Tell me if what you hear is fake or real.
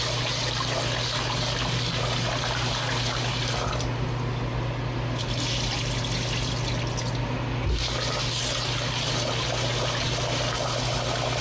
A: real